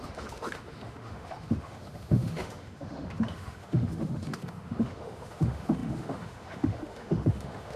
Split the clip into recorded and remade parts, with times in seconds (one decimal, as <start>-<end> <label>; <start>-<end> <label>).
0.0-7.8 remade